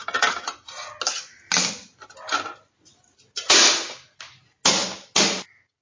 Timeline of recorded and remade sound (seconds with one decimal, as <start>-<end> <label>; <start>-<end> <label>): 0.0-5.8 recorded